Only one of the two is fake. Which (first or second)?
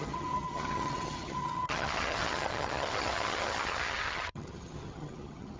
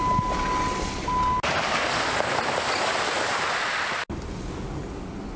first